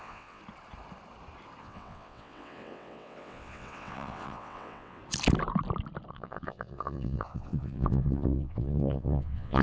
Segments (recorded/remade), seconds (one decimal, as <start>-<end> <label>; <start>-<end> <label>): 0.0-0.4 remade; 0.4-1.6 recorded; 1.6-5.0 remade; 5.0-6.1 recorded; 6.1-9.6 remade